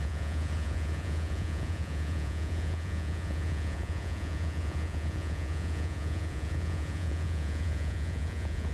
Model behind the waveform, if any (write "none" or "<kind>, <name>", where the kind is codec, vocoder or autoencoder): vocoder, Vocos